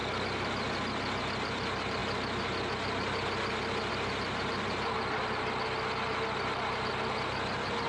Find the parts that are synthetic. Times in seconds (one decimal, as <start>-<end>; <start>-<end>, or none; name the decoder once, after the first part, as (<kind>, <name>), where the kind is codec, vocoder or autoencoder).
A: none